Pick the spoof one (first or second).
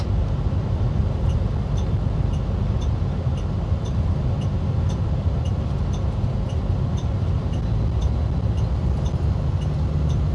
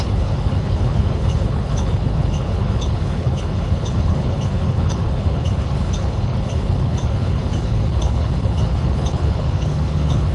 second